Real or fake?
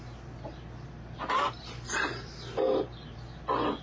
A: real